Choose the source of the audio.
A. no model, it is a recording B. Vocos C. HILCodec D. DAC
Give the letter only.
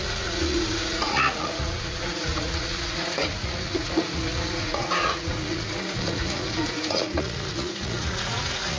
B